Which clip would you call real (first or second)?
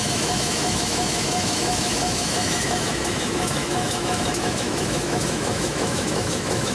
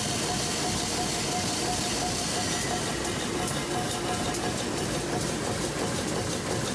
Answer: second